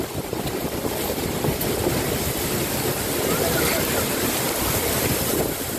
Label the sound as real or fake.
real